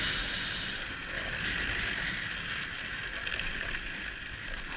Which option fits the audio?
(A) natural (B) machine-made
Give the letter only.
A